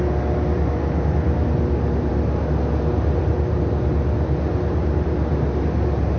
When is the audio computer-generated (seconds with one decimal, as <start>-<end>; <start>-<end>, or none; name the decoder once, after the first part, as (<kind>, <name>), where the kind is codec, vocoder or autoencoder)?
none

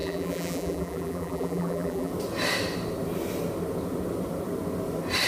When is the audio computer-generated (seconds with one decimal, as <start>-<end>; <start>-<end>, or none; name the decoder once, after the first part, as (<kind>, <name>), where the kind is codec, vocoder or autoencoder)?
0.0-2.1 (vocoder, BigVGAN v2)

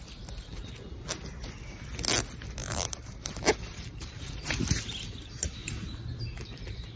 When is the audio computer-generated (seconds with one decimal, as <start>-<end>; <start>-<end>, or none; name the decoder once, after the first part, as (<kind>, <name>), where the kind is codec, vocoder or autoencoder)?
2.6-4.6 (vocoder, BigVGAN v2); 5.6-7.0

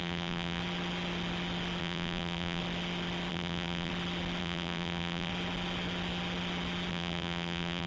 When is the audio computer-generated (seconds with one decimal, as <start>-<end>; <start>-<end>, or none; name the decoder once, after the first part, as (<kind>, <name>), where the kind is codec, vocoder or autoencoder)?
0.0-0.6 (vocoder, BigVGAN v2); 1.8-2.6; 3.3-3.9; 4.4-5.3; 6.9-7.9

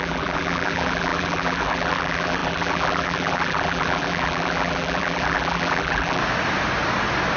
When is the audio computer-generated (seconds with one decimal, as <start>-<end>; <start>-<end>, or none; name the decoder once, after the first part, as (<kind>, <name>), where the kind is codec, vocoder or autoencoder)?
0.0-6.2 (vocoder, BigVGAN v2)

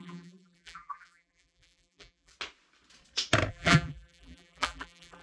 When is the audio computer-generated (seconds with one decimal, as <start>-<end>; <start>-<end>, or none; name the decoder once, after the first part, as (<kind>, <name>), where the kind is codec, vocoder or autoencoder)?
0.0-2.3 (vocoder, BigVGAN v2); 3.5-5.2